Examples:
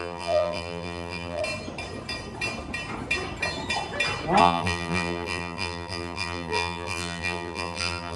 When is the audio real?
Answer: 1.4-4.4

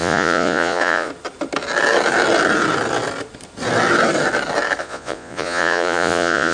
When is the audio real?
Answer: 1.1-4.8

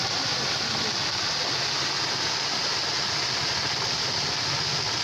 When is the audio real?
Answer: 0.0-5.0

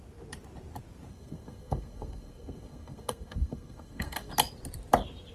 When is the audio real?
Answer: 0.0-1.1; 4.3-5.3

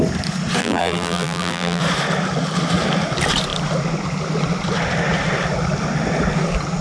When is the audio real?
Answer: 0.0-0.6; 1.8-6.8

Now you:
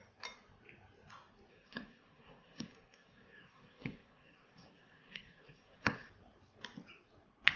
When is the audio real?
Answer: 0.0-1.5; 6.1-7.6